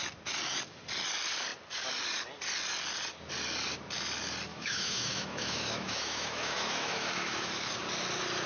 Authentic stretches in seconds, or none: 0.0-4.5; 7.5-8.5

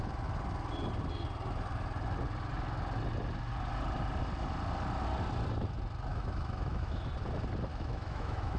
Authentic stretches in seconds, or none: 0.0-6.1; 7.1-7.7

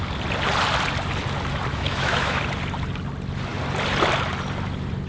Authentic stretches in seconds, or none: 0.0-1.7; 2.4-5.1

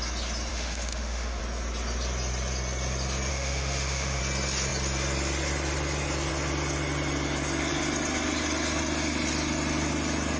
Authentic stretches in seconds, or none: 0.0-0.5; 1.4-3.3; 4.2-10.4

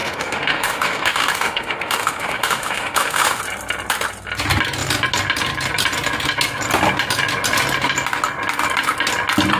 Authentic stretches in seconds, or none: 3.4-9.6

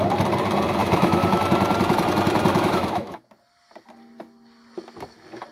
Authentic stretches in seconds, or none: 0.0-0.8; 1.4-2.5; 3.3-5.5

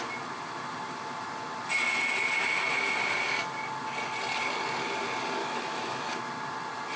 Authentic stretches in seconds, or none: 0.0-5.4; 6.1-7.0

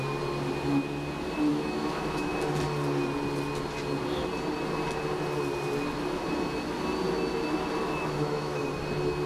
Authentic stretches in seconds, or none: 0.0-1.5; 2.3-7.8; 8.6-9.3